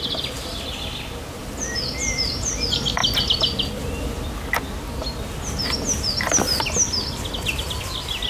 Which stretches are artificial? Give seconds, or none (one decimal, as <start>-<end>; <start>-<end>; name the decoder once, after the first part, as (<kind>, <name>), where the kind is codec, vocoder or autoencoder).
none